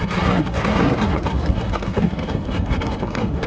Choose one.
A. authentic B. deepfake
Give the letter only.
B